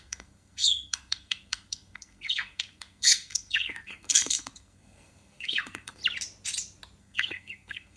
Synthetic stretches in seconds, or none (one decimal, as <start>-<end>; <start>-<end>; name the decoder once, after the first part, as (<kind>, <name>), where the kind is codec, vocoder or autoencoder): 0.0-6.0 (codec, SNAC); 7.0-8.0